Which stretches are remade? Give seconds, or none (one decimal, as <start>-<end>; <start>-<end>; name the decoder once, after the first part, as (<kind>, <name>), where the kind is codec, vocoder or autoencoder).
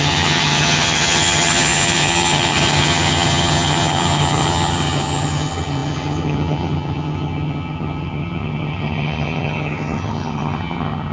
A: 0.0-11.1 (vocoder, HiFi-GAN)